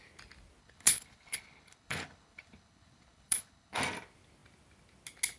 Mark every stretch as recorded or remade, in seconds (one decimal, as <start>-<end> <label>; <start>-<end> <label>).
0.0-0.6 recorded; 0.6-3.8 remade; 3.8-5.4 recorded